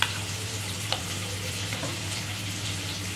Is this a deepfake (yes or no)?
yes